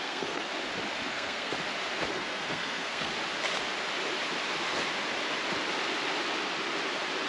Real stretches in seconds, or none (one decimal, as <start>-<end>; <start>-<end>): 0.5-1.1; 1.5-2.1; 3.1-7.3